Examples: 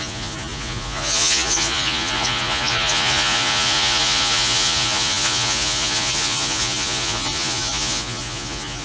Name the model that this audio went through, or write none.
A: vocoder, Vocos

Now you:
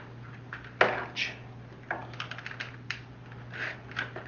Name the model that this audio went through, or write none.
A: none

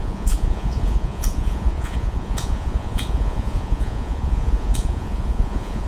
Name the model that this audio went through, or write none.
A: vocoder, Vocos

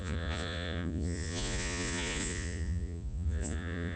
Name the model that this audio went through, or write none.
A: vocoder, Vocos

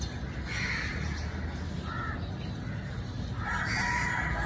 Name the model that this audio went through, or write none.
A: none